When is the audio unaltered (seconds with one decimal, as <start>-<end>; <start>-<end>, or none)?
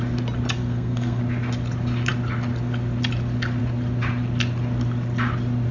0.0-0.6; 1.2-5.7